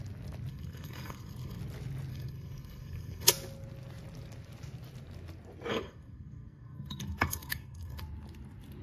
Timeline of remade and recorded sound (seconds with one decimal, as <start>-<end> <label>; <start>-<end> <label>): 0.0-0.5 recorded; 0.5-1.6 remade; 1.6-2.1 recorded; 2.1-3.3 remade; 3.3-5.7 recorded; 5.7-8.0 remade; 8.0-8.8 recorded